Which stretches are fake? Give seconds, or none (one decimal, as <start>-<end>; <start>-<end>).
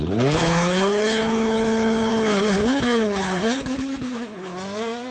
0.0-4.5